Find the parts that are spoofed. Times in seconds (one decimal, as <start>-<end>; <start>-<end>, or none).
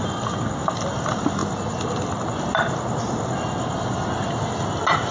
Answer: none